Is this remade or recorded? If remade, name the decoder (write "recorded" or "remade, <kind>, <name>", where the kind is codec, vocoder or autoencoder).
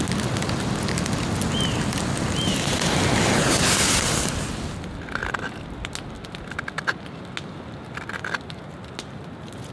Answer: recorded